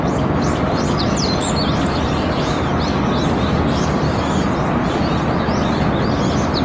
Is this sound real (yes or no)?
yes